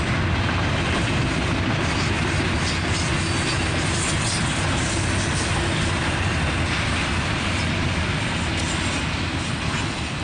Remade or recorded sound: recorded